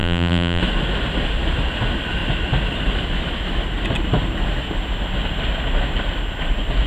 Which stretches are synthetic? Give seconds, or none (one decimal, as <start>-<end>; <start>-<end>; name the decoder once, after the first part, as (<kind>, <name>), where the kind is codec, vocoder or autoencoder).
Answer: 0.0-0.6 (vocoder, BigVGAN v2)